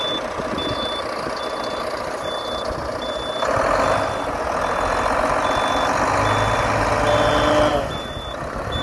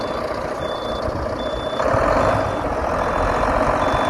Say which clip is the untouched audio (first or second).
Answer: first